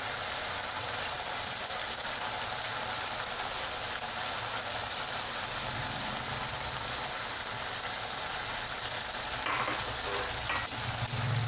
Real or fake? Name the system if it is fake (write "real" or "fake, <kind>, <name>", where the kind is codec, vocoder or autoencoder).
real